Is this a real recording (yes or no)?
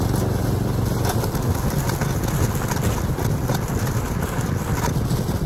yes